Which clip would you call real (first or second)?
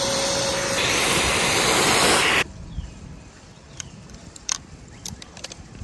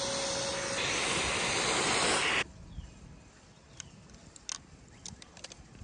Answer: second